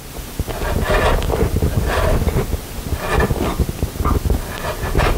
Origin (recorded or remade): recorded